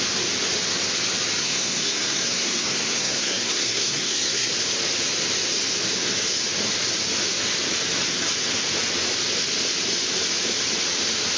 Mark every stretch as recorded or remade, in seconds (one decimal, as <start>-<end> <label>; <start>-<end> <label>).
0.0-1.4 recorded; 1.4-4.5 remade; 4.5-11.4 recorded

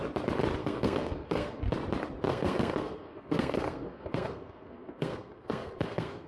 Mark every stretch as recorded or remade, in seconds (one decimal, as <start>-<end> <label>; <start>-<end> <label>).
0.0-0.6 recorded; 0.6-1.6 remade; 1.6-2.3 recorded; 2.3-6.3 remade

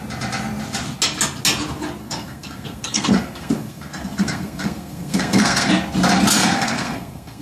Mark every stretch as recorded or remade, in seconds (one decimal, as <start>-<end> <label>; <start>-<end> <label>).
0.0-2.0 recorded; 2.0-5.7 remade; 5.7-6.4 recorded; 6.4-7.4 remade

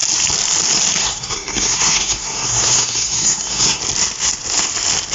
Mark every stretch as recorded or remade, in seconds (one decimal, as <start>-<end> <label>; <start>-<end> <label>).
0.0-1.0 recorded; 1.0-3.8 remade; 3.8-5.1 recorded

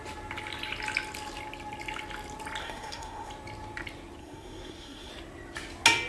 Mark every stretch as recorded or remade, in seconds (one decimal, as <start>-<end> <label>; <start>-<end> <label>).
0.0-2.6 recorded; 2.6-3.3 remade; 3.3-4.2 recorded; 4.2-5.1 remade; 5.1-6.1 recorded

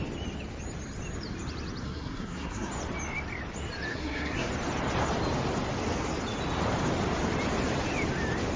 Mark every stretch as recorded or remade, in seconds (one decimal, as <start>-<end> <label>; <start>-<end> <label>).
0.0-1.8 recorded; 1.8-2.7 remade; 2.7-3.9 recorded; 3.9-4.5 remade; 4.5-8.6 recorded

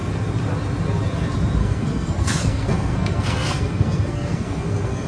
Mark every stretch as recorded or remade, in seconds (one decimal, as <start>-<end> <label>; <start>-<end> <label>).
0.0-1.6 recorded; 1.6-5.1 remade